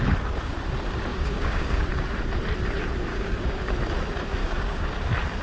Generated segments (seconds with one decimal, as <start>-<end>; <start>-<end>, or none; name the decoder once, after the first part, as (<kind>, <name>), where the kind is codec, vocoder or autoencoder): 1.1-1.8 (codec, DAC); 3.1-3.7; 4.4-4.9